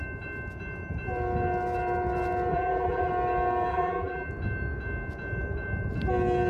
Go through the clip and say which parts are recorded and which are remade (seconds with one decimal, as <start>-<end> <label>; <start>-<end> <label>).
0.0-2.5 recorded; 2.5-3.1 remade; 3.1-3.7 recorded; 3.7-4.3 remade; 4.3-6.5 recorded